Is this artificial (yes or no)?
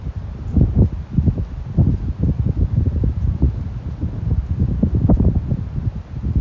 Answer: no